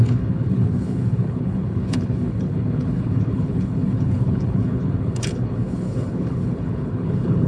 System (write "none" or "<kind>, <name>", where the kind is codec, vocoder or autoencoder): codec, HILCodec